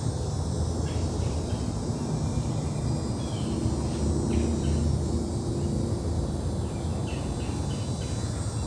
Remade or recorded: recorded